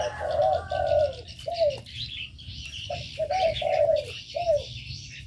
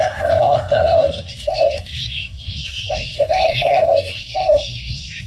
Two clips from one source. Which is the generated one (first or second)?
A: second